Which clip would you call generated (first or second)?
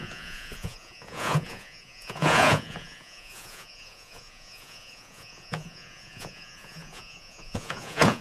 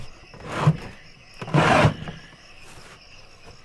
first